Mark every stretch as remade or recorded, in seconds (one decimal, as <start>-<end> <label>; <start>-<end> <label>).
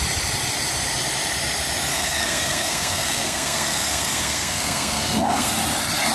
0.0-1.9 recorded; 1.9-5.5 remade; 5.5-6.1 recorded